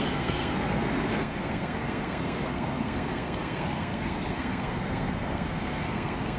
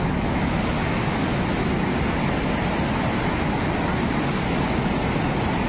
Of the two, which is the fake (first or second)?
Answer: first